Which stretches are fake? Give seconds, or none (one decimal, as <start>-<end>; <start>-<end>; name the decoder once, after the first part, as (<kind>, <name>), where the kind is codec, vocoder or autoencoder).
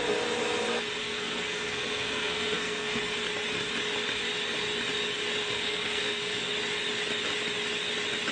1.0-3.0 (codec, SNAC); 5.4-6.5